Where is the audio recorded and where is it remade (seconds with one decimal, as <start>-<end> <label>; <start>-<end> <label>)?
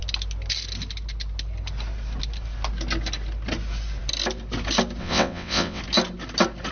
0.0-5.0 recorded; 5.0-5.8 remade; 5.8-6.7 recorded